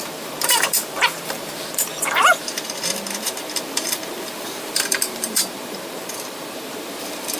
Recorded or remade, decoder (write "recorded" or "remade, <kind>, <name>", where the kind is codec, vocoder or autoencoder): remade, vocoder, BigVGAN v2